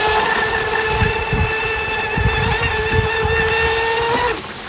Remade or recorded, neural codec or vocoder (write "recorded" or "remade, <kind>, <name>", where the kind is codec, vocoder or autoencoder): recorded